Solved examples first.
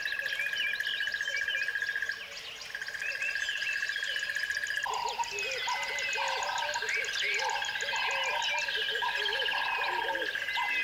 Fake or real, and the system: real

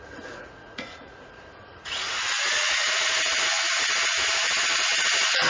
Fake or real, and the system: fake, vocoder, Vocos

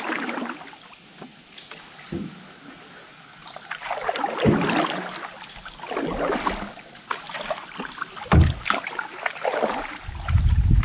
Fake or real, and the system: real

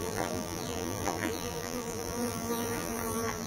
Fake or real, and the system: fake, vocoder, BigVGAN v2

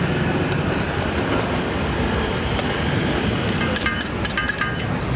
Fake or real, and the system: fake, vocoder, BigVGAN v2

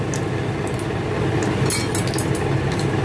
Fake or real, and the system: real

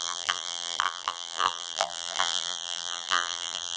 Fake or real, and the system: fake, vocoder, BigVGAN v2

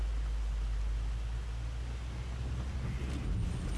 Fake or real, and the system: real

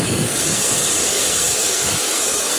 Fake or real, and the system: fake, codec, SNAC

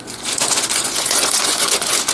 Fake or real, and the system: fake, vocoder, Vocos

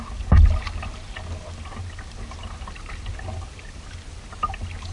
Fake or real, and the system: real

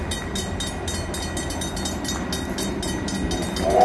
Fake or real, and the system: real